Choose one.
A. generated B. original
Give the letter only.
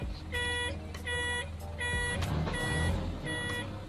B